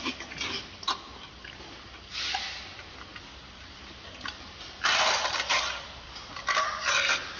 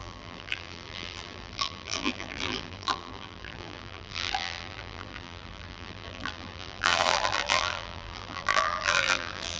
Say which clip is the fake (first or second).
second